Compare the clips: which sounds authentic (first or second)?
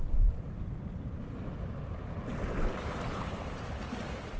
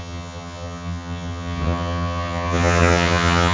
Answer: first